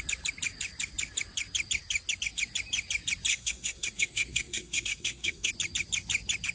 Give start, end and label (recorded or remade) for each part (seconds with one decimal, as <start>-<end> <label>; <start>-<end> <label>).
0.0-3.3 recorded; 3.3-5.5 remade; 5.5-6.5 recorded